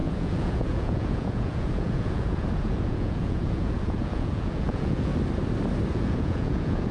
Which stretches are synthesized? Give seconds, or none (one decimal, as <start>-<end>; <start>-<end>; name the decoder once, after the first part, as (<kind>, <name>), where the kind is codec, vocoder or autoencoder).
0.0-5.1 (vocoder, Vocos); 5.9-6.9